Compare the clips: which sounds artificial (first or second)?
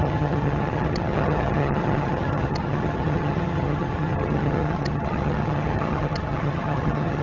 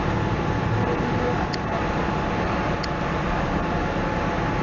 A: first